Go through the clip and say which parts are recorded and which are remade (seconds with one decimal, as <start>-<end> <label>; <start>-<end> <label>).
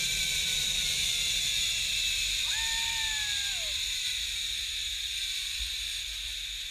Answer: 0.0-1.0 remade; 1.0-6.7 recorded